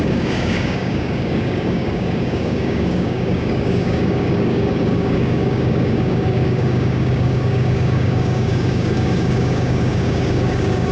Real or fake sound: fake